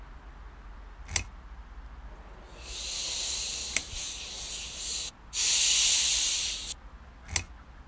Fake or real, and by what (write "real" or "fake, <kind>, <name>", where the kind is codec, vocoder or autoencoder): real